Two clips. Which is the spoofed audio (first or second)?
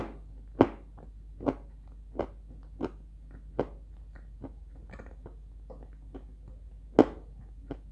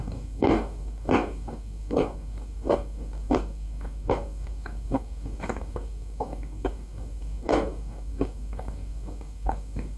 second